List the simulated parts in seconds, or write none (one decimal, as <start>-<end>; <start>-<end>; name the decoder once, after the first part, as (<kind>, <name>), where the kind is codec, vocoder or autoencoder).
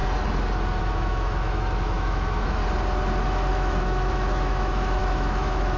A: 0.8-2.6 (autoencoder, DAC-VAE); 3.5-5.8